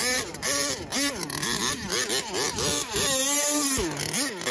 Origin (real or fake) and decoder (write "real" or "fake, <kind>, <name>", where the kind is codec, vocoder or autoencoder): real